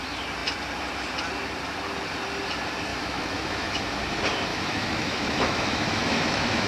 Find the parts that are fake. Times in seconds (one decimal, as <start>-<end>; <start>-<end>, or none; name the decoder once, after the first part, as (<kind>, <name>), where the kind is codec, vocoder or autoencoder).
2.9-3.8 (autoencoder, DAC-VAE); 4.5-6.7